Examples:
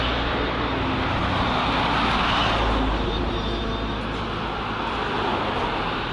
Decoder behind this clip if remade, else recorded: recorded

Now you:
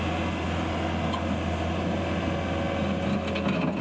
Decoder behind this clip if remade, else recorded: recorded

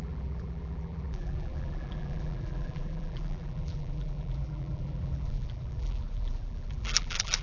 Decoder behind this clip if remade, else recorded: remade, vocoder, BigVGAN v2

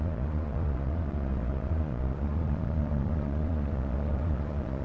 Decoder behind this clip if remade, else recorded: remade, vocoder, Vocos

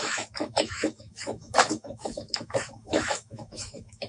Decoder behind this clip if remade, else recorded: remade, autoencoder, DAC-VAE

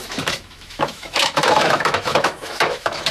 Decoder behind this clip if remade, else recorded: remade, autoencoder, DAC-VAE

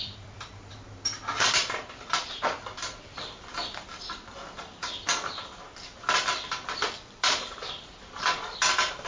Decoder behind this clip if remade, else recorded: remade, vocoder, BigVGAN v2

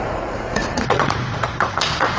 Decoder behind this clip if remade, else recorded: remade, vocoder, Vocos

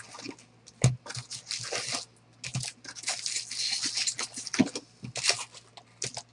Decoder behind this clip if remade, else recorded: recorded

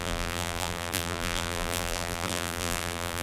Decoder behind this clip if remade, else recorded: remade, vocoder, BigVGAN v2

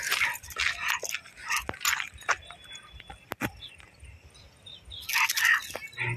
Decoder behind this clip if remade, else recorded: recorded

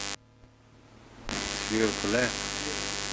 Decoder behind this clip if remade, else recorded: recorded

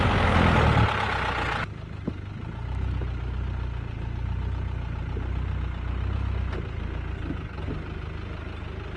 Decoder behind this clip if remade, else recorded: recorded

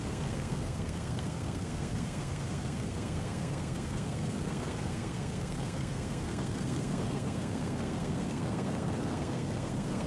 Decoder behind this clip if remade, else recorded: remade, codec, SNAC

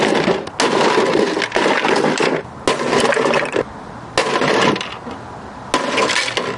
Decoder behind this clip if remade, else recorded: recorded